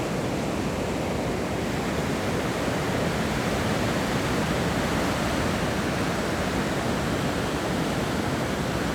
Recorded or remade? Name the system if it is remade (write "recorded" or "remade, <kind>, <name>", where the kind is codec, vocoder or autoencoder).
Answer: recorded